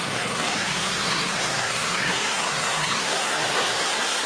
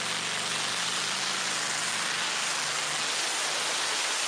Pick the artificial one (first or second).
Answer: first